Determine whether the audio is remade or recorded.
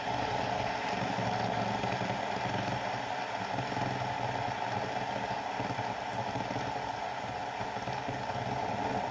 recorded